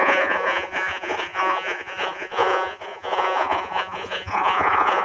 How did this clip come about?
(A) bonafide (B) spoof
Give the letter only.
B